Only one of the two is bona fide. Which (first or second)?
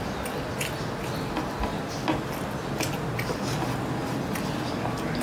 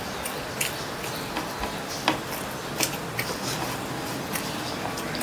first